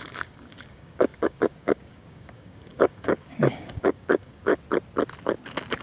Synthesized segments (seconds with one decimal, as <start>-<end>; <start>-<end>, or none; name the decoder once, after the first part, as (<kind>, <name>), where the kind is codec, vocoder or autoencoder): 0.0-4.5 (codec, DAC)